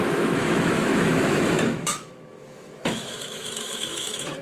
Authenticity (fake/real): fake